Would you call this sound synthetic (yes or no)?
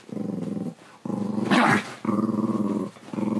no